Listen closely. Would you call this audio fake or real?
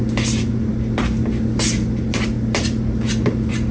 real